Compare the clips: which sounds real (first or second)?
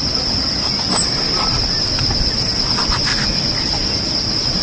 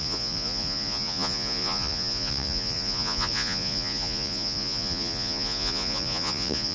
first